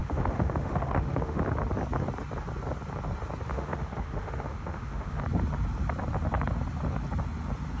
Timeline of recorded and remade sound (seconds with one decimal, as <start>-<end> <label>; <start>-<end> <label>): 0.0-1.4 remade; 1.4-3.5 recorded; 3.5-5.2 remade; 5.2-7.8 recorded